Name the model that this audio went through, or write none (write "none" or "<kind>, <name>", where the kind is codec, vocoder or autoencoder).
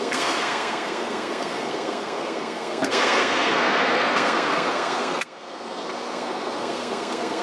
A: codec, SNAC